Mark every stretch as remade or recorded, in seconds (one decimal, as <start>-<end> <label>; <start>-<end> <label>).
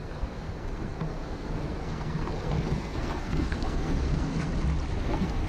0.0-4.5 remade; 4.5-5.0 recorded; 5.0-5.5 remade